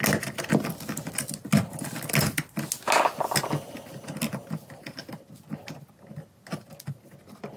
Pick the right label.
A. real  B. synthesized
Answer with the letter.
A